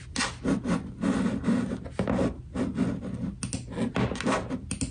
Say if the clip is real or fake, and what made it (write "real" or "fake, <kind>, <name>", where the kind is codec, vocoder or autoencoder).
real